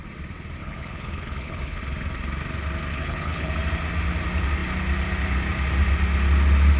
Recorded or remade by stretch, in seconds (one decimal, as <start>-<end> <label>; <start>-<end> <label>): 0.0-0.6 recorded; 0.6-1.8 remade; 1.8-2.9 recorded; 2.9-3.5 remade; 3.5-6.8 recorded